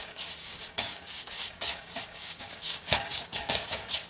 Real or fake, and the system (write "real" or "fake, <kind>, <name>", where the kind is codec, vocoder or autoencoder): fake, codec, DAC